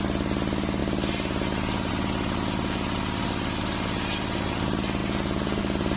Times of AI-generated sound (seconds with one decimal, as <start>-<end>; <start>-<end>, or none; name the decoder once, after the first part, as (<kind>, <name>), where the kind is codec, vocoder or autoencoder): 5.0-5.6 (vocoder, Vocos)